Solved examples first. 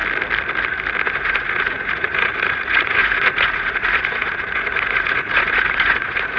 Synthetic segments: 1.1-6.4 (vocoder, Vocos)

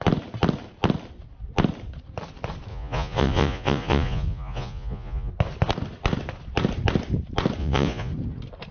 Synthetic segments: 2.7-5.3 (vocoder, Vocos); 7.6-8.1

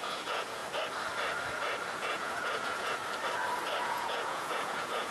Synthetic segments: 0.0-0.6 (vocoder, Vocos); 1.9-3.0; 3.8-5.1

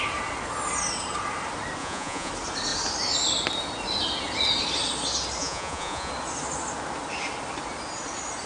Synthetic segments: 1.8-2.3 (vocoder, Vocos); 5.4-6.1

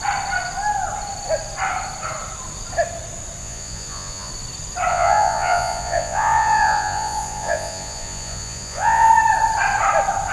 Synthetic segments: 3.4-4.3 (vocoder, Vocos); 4.9-9.1

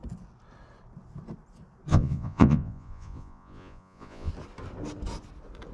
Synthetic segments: 1.9-4.3 (vocoder, Vocos)

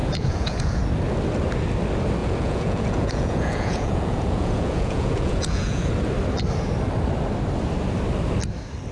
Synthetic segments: 0.0-0.8 (vocoder, Vocos); 2.2-5.9

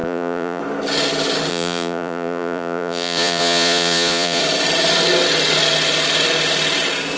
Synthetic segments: 0.0-0.6 (vocoder, Vocos); 1.5-4.4